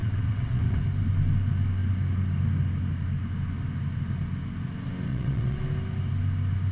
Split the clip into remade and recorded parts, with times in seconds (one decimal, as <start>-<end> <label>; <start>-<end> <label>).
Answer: 0.0-0.8 remade; 0.8-5.1 recorded; 5.1-5.6 remade; 5.6-6.7 recorded